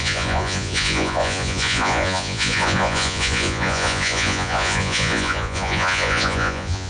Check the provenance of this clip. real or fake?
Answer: fake